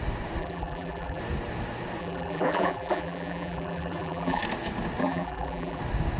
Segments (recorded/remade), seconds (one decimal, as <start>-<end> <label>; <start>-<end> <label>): 0.0-0.4 recorded; 0.4-1.2 remade; 1.2-2.0 recorded; 2.0-4.4 remade; 4.4-5.0 recorded; 5.0-5.8 remade; 5.8-6.2 recorded